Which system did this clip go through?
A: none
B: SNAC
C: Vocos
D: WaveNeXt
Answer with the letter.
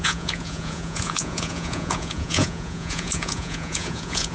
C